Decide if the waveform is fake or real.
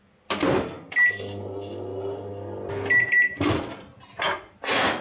real